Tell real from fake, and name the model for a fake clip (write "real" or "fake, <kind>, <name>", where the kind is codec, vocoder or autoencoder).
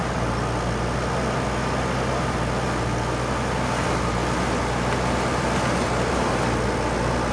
real